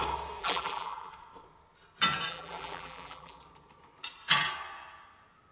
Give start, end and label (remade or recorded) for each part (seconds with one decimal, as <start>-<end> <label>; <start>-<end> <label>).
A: 0.0-0.4 recorded; 0.4-1.1 remade; 1.1-2.3 recorded; 2.3-3.4 remade; 3.4-5.5 recorded